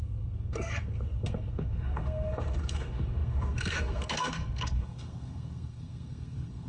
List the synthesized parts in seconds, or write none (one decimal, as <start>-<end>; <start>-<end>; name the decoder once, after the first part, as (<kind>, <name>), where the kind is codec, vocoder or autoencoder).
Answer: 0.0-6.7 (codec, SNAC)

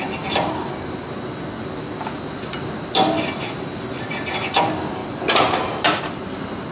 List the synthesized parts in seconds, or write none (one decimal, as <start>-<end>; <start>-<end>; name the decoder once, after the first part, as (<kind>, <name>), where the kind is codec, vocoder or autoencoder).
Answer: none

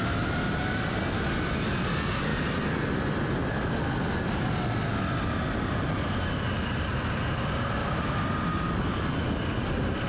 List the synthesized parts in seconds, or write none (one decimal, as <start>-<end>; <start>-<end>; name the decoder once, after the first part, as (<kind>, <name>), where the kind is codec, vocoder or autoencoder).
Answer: 7.8-8.3 (vocoder, BigVGAN v2)

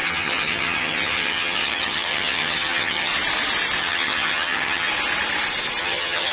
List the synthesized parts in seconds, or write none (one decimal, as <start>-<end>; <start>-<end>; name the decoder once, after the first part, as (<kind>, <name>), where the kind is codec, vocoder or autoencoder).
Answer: 0.0-3.1 (vocoder, HiFi-GAN); 3.8-4.9; 5.8-6.3

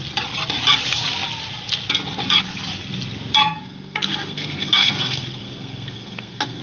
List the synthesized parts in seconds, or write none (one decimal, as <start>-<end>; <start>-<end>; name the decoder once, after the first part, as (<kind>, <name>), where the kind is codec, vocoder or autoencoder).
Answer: 3.4-6.6 (codec, SNAC)

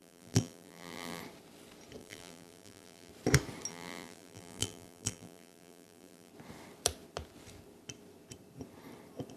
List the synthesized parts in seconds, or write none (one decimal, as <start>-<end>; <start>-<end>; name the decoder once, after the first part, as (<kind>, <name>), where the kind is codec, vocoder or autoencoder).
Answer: 0.0-1.2 (vocoder, BigVGAN v2); 2.0-3.1; 3.7-6.3